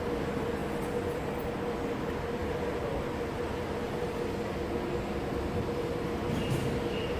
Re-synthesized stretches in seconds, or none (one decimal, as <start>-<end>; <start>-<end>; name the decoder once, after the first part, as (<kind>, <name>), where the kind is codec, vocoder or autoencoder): none